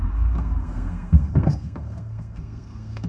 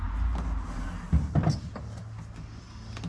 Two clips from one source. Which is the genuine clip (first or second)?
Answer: second